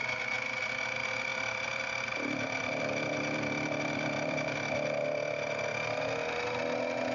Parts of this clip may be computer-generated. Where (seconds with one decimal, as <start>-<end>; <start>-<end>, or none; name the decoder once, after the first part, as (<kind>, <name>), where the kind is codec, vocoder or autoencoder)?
1.3-5.6 (vocoder, BigVGAN v2)